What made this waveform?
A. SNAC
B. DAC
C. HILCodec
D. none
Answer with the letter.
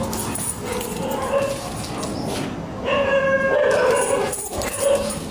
D